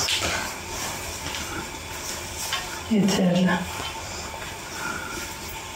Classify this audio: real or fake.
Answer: real